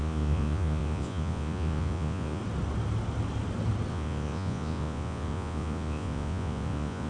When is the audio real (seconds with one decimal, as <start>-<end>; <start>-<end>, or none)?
2.4-3.9